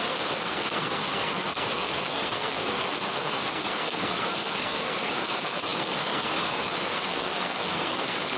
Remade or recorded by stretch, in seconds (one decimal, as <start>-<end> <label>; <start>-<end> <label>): 0.0-8.4 remade